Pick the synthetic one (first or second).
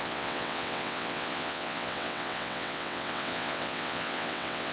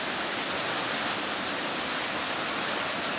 first